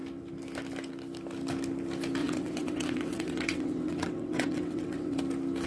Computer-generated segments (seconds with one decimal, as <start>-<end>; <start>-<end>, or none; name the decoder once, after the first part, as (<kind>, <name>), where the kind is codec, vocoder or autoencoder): 2.2-5.2 (vocoder, WaveNeXt)